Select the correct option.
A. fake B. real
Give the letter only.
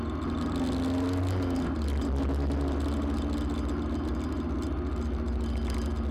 B